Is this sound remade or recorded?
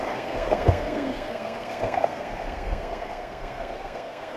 remade